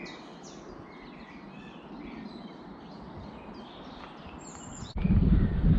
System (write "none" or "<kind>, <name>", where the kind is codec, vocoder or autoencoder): none